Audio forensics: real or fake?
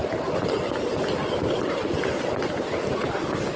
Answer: real